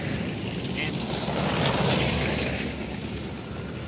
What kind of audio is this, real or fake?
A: fake